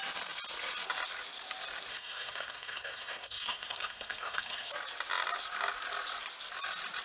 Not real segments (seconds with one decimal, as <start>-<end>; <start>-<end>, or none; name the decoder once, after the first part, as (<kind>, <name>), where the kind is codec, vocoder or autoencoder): 1.9-4.7 (codec, SNAC)